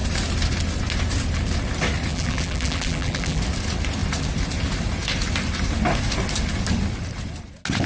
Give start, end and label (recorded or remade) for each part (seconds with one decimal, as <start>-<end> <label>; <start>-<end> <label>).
0.0-2.1 recorded; 2.1-3.4 remade; 3.4-7.9 recorded